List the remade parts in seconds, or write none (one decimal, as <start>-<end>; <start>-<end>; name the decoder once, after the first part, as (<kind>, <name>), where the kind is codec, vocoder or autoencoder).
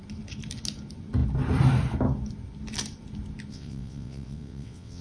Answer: 3.5-5.0 (vocoder, WaveNeXt)